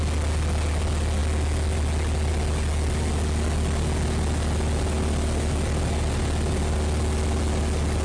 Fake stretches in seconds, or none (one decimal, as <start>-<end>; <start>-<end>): none